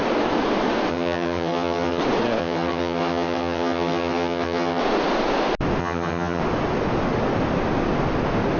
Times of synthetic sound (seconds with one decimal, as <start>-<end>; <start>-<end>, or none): 0.9-2.0; 2.4-4.8; 5.8-6.4